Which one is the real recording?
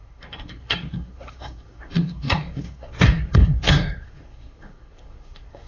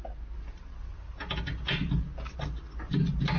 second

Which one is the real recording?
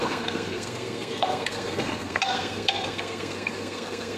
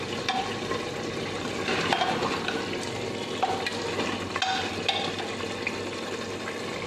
second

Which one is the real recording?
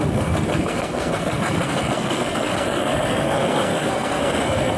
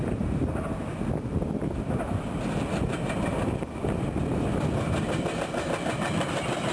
second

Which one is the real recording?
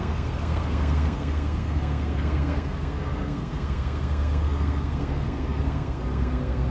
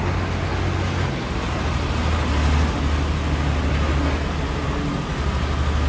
second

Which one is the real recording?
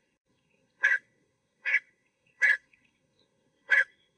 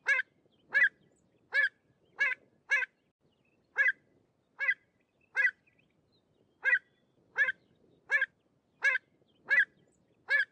second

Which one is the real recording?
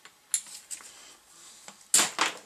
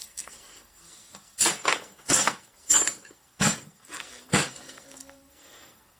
first